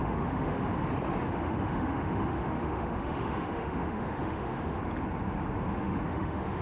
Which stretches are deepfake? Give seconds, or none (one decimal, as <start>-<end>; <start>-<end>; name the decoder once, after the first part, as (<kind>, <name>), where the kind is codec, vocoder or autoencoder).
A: 0.0-0.7 (autoencoder, DAC-VAE); 1.3-4.8; 5.7-6.6